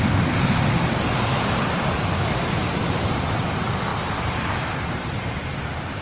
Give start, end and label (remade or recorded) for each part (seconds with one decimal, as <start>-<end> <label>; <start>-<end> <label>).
0.0-2.6 recorded; 2.6-3.4 remade; 3.4-3.9 recorded; 3.9-5.5 remade; 5.5-6.0 recorded